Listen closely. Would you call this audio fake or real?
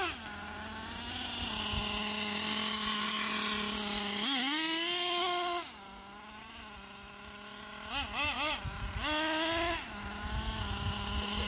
real